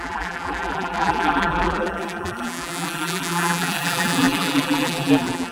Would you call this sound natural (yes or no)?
no